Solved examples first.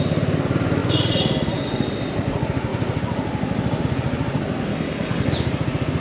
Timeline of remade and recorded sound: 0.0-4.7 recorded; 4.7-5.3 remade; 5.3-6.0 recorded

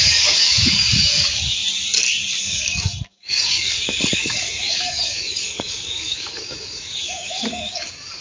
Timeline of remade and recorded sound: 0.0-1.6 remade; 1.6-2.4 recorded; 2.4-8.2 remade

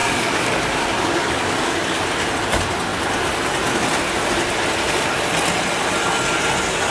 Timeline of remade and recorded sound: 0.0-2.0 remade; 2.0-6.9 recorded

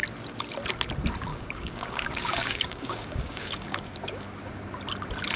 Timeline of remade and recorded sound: 0.0-1.3 recorded; 1.3-4.5 remade; 4.5-5.4 recorded

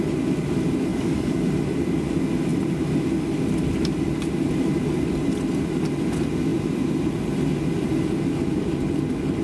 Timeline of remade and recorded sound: 0.0-0.9 recorded; 0.9-1.5 remade; 1.5-9.4 recorded